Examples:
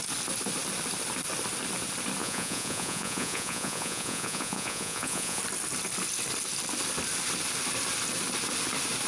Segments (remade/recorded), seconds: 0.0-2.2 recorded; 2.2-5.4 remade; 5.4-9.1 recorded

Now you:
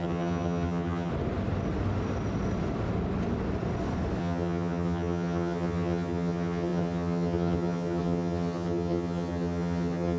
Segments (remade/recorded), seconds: 0.0-1.1 remade; 1.1-4.2 recorded; 4.2-10.2 remade

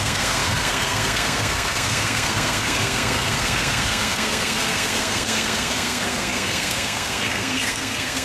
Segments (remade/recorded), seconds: 0.0-8.2 remade

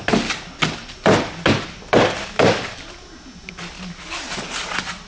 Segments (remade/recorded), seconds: 0.0-5.1 recorded

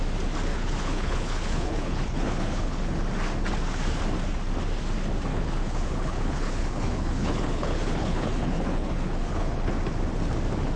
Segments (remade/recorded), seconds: 0.0-0.5 recorded; 0.5-3.0 remade; 3.0-5.3 recorded; 5.3-9.7 remade; 9.7-10.8 recorded

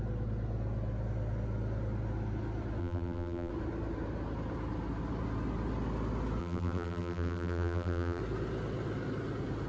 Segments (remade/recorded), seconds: 0.0-2.8 recorded; 2.8-3.5 remade; 3.5-6.4 recorded; 6.4-8.2 remade; 8.2-9.7 recorded

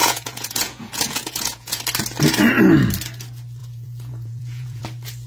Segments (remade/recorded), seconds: 0.0-1.8 remade; 1.8-3.6 recorded; 3.6-4.8 remade; 4.8-5.3 recorded

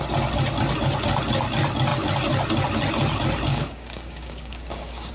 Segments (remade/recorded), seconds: 0.0-3.5 recorded; 3.5-5.1 remade